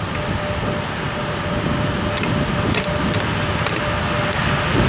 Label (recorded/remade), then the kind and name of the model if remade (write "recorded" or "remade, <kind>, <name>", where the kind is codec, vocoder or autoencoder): recorded